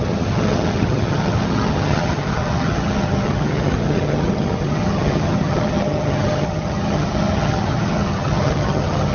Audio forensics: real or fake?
fake